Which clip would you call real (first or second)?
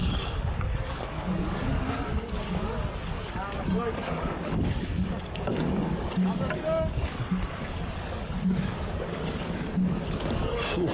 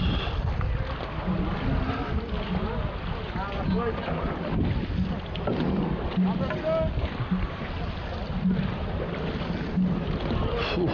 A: second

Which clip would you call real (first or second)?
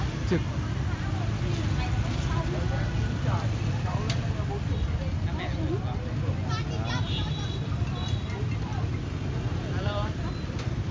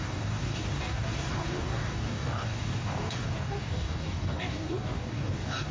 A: first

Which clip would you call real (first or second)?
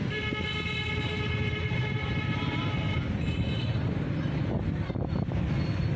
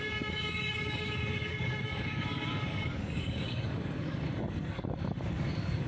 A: first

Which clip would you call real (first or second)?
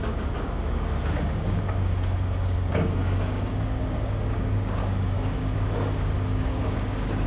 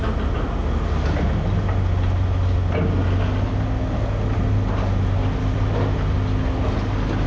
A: second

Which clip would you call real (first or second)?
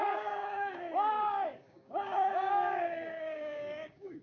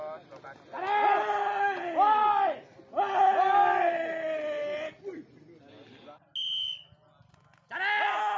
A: second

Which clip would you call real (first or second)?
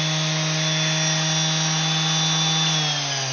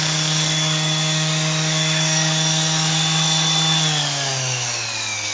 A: first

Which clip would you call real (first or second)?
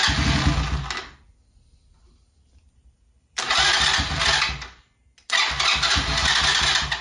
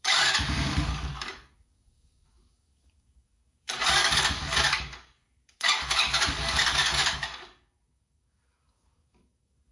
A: first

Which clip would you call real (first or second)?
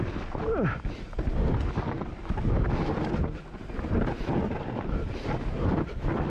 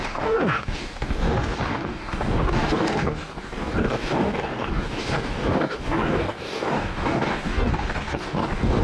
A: first